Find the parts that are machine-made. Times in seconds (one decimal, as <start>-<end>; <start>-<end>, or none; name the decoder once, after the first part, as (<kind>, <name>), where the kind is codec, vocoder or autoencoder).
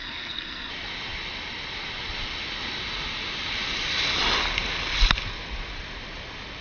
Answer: 0.0-0.7 (codec, SNAC)